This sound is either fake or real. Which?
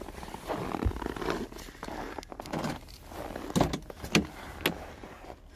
real